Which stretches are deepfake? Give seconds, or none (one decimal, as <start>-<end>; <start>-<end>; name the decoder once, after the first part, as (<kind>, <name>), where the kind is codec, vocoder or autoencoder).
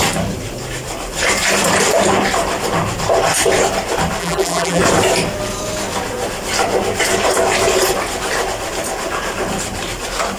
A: 4.2-4.8 (vocoder, BigVGAN v2)